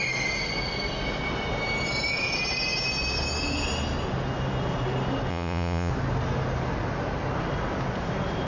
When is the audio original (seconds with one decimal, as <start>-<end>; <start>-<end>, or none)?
0.0-5.3; 5.9-8.5